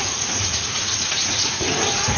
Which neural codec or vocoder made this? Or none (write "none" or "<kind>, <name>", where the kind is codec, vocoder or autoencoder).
vocoder, Vocos